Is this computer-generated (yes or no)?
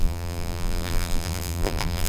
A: yes